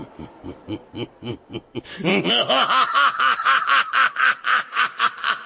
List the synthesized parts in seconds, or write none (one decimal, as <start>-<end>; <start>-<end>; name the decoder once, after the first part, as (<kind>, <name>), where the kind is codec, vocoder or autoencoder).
2.1-3.6 (codec, DAC); 4.5-5.1